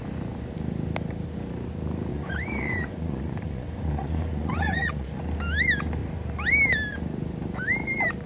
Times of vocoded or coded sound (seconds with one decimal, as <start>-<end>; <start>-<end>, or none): 2.1-5.2